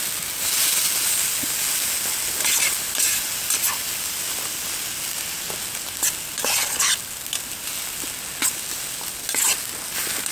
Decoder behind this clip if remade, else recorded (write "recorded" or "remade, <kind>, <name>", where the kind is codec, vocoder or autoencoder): recorded